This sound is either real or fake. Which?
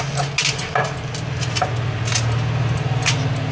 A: real